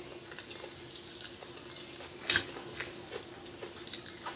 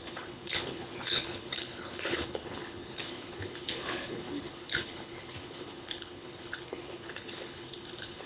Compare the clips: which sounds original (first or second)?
first